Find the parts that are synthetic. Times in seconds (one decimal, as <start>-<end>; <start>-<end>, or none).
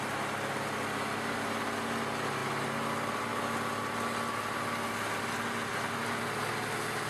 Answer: none